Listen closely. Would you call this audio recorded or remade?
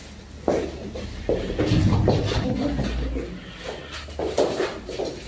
recorded